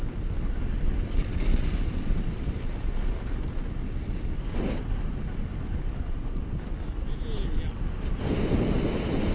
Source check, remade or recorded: recorded